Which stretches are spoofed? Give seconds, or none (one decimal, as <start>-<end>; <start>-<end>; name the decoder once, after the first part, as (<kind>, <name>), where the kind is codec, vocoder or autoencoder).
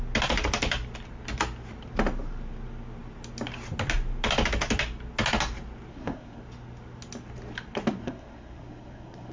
5.9-6.4 (codec, SNAC); 8.0-9.3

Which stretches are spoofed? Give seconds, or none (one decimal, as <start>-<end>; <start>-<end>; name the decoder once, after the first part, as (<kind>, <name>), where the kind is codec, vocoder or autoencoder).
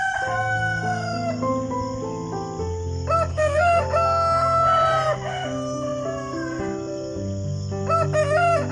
3.3-3.8 (codec, SNAC)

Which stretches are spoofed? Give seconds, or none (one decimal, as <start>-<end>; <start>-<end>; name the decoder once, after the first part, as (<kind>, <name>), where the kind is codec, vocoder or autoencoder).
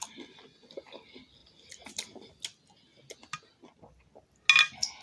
none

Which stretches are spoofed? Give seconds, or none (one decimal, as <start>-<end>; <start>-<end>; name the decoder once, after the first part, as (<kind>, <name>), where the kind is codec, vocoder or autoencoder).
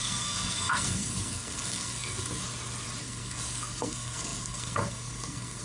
0.0-2.4 (codec, SNAC); 3.0-5.6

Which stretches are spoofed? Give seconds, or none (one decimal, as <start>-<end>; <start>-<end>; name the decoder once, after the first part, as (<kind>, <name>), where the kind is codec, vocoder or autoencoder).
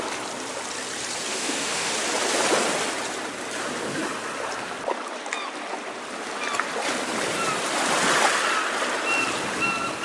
1.3-1.9 (autoencoder, DAC-VAE)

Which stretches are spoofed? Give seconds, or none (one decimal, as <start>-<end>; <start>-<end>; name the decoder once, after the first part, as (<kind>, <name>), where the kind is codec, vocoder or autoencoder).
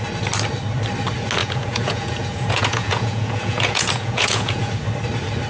1.4-4.7 (vocoder, Vocos)